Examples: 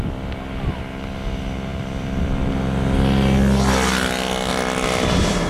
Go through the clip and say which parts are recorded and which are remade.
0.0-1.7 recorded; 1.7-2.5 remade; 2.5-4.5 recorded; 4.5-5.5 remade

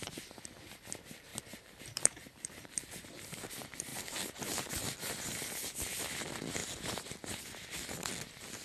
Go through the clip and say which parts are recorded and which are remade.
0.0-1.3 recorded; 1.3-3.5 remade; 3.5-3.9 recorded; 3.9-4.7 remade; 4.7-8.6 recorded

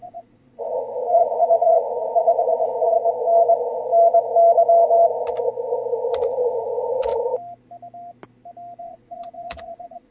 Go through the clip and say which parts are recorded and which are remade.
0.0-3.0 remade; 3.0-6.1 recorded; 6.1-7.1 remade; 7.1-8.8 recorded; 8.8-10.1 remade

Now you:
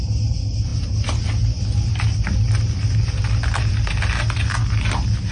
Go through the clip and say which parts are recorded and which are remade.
0.0-5.3 recorded

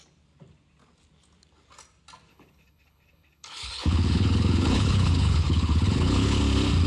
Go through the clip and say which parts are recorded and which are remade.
0.0-2.3 recorded; 2.3-6.4 remade; 6.4-6.9 recorded

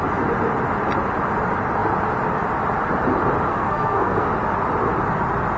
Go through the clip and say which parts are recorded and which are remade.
0.0-3.5 recorded; 3.5-4.3 remade; 4.3-5.6 recorded

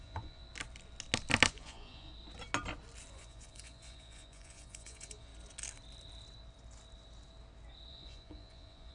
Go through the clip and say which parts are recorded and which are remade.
0.0-0.4 remade; 0.4-1.5 recorded; 1.5-2.1 remade; 2.1-3.1 recorded; 3.1-5.3 remade; 5.3-7.9 recorded; 7.9-8.9 remade

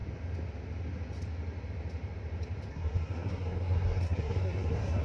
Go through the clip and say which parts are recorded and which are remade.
0.0-2.7 recorded; 2.7-5.0 remade